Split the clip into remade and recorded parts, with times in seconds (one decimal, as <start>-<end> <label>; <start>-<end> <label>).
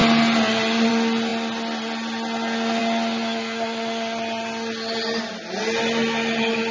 0.0-6.7 recorded